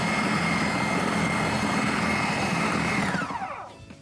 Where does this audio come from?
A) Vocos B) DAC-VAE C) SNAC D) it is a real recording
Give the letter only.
D